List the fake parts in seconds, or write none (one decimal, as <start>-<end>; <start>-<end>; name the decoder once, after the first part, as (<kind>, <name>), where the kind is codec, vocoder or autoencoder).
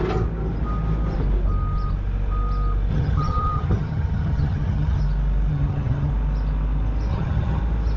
2.9-5.0 (vocoder, HiFi-GAN); 5.5-6.1; 7.1-7.6